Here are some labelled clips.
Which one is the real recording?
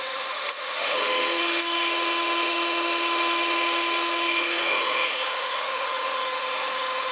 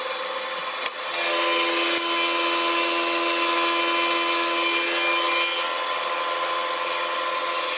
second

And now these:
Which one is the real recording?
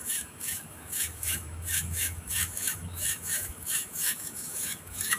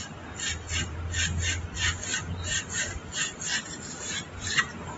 second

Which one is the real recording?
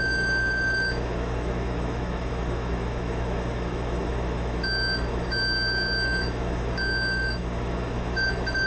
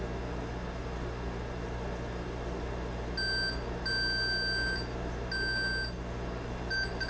second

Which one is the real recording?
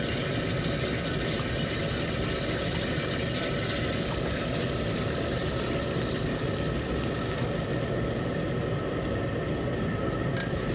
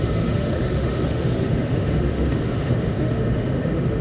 first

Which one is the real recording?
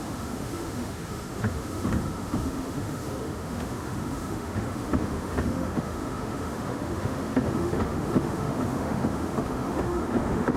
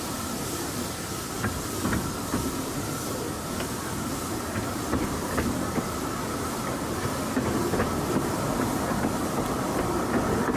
second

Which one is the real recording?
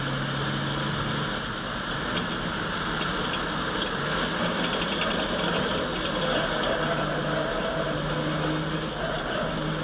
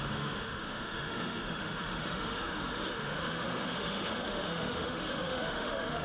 first